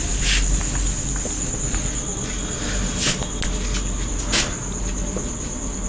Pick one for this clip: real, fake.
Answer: real